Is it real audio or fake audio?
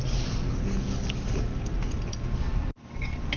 real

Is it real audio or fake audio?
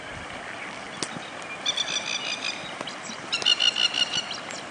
real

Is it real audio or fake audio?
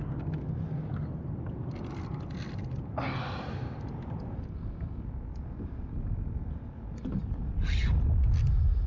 real